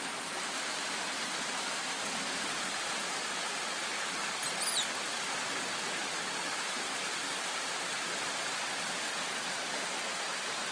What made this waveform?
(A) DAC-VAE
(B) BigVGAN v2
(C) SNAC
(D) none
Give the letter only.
D